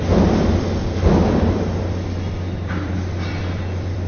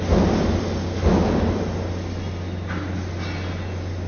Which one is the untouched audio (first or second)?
second